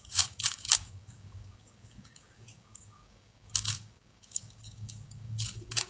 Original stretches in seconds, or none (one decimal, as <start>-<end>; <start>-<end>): none